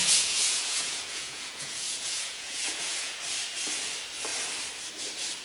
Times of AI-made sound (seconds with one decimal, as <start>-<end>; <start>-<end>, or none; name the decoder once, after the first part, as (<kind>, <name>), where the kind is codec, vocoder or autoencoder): 0.0-3.2 (vocoder, Vocos)